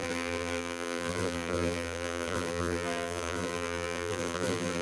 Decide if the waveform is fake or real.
fake